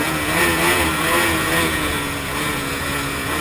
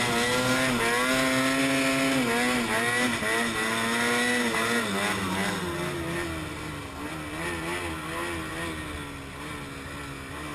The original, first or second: second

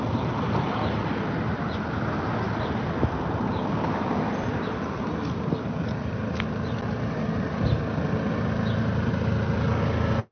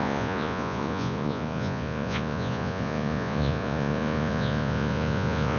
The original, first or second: first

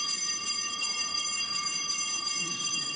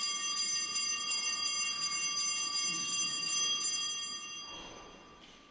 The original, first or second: second